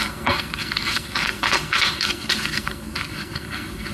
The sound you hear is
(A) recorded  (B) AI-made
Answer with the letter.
B